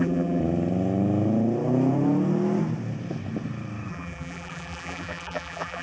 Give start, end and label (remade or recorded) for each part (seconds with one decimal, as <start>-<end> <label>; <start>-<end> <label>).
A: 0.0-0.4 remade; 0.4-3.9 recorded; 3.9-5.8 remade